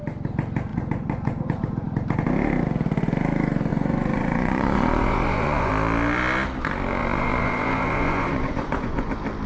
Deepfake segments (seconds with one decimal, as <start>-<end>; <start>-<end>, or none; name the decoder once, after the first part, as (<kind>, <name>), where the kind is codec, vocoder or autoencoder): 0.7-1.6 (vocoder, Vocos); 3.7-5.7; 7.0-9.1

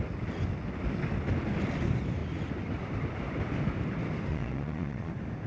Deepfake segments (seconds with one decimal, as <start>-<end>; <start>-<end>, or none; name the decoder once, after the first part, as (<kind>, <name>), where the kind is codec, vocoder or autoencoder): 4.3-5.1 (vocoder, Vocos)

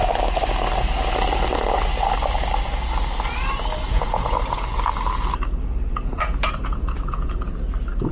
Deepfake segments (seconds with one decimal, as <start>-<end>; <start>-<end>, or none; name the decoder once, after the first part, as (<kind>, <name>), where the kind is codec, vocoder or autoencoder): 3.9-4.8 (vocoder, Vocos); 5.9-7.5

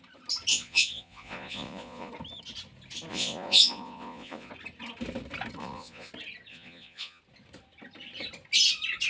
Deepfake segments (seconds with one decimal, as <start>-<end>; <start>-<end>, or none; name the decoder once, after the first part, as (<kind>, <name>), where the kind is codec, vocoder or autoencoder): 0.5-2.1 (vocoder, Vocos); 3.1-4.5; 5.6-6.1; 6.5-7.2

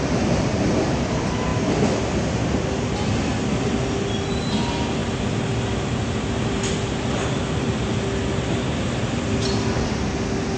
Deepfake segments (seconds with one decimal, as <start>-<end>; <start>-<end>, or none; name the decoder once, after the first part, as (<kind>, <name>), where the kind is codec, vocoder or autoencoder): none

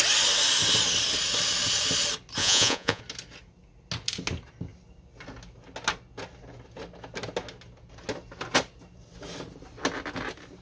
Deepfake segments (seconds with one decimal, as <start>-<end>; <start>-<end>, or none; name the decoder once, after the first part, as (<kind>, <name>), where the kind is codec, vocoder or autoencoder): 2.4-3.0 (vocoder, Vocos)

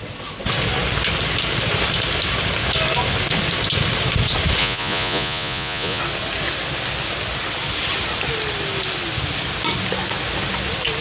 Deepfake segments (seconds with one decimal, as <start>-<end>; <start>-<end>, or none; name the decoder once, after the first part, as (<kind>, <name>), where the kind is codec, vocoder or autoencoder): 4.6-6.0 (vocoder, Vocos)

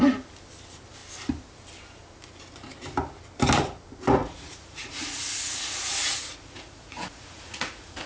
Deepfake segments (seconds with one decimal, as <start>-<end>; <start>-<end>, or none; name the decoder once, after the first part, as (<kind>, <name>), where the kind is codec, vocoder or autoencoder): 4.2-8.1 (vocoder, Vocos)